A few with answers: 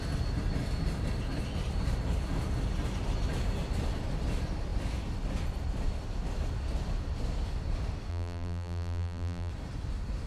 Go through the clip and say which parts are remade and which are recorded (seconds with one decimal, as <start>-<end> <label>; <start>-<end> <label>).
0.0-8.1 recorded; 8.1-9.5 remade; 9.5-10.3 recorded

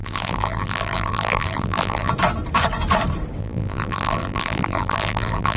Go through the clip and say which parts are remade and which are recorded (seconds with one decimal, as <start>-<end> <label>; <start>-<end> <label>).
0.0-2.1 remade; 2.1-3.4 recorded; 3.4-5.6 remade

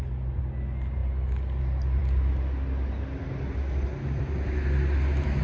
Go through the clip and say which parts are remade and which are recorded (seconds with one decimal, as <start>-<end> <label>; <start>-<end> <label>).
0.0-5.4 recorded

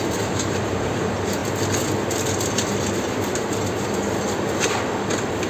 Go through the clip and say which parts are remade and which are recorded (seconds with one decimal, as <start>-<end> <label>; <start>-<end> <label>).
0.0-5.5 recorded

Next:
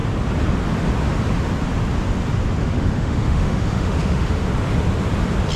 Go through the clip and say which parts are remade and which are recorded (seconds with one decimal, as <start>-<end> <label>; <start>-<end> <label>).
0.0-2.6 recorded; 2.6-4.5 remade; 4.5-5.6 recorded

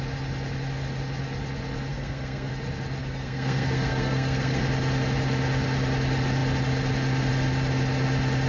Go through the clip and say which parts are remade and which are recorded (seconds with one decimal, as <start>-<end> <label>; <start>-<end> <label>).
0.0-1.9 recorded; 1.9-2.5 remade; 2.5-3.0 recorded; 3.0-4.6 remade; 4.6-8.5 recorded

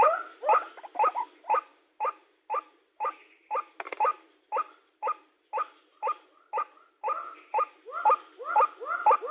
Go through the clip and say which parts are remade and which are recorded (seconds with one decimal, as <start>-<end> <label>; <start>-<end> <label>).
0.0-9.3 recorded